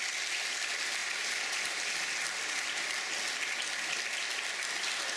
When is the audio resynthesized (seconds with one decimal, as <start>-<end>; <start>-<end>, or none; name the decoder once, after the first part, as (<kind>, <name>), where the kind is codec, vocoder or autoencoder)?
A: none